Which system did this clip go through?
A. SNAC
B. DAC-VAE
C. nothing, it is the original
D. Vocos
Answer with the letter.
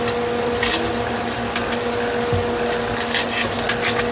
C